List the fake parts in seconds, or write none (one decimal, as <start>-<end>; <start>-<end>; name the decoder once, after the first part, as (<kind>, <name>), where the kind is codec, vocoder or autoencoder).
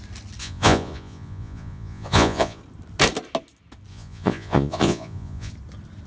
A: 0.4-2.6 (vocoder, Vocos); 3.9-5.5